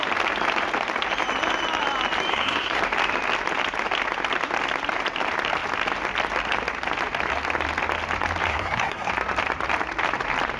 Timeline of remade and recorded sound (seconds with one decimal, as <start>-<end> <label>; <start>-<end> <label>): 0.0-2.3 recorded; 2.3-2.8 remade; 2.8-8.5 recorded; 8.5-9.1 remade; 9.1-10.6 recorded